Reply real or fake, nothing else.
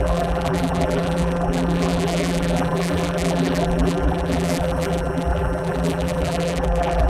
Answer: fake